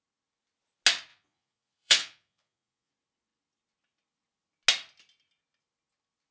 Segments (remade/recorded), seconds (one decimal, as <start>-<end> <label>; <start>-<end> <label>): 0.0-1.1 recorded; 1.1-2.9 remade; 2.9-6.3 recorded